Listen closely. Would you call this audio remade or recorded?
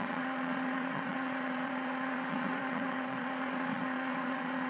remade